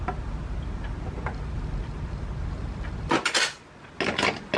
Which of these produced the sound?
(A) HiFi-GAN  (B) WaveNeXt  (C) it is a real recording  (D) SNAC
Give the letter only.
C